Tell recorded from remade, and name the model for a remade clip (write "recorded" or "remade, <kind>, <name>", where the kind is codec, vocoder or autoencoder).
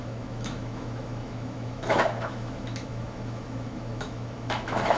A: remade, autoencoder, DAC-VAE